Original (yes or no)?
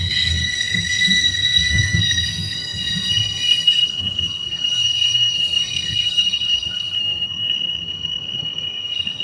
no